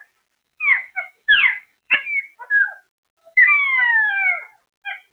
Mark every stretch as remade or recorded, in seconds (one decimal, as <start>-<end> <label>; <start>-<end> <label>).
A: 0.0-0.4 recorded; 0.4-2.2 remade; 2.2-3.2 recorded; 3.2-4.1 remade; 4.1-5.1 recorded